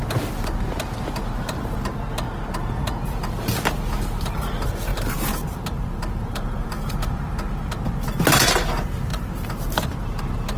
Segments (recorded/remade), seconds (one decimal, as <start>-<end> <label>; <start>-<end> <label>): 0.0-4.9 recorded; 4.9-6.9 remade; 6.9-9.1 recorded; 9.1-10.2 remade; 10.2-10.6 recorded